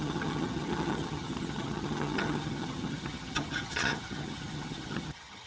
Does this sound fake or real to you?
fake